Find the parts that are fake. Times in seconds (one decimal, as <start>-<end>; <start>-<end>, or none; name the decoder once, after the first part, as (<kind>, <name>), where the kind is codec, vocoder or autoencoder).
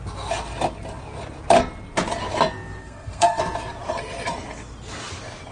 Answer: 2.8-3.4 (codec, SNAC)